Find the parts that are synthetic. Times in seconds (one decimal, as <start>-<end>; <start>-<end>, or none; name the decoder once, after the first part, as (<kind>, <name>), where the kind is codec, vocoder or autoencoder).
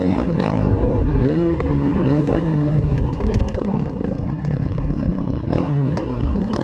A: 0.0-6.6 (codec, SNAC)